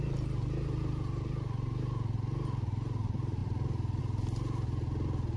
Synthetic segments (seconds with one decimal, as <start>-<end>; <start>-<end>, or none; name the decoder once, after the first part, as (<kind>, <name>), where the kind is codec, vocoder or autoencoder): none